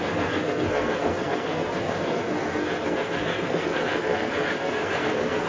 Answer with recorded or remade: remade